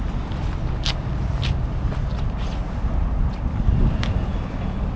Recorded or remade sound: recorded